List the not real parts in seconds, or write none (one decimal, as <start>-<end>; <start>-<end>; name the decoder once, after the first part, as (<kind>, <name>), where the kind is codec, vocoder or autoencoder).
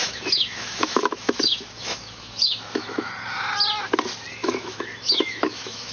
0.0-3.1 (autoencoder, DAC-VAE); 4.4-5.9